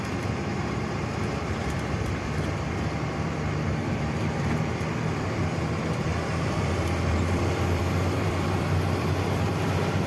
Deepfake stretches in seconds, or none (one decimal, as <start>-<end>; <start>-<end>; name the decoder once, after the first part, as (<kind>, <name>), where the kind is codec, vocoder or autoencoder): 0.0-10.1 (vocoder, BigVGAN v2)